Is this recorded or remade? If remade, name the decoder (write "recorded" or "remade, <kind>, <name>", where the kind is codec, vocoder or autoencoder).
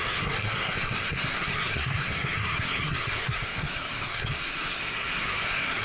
remade, codec, SNAC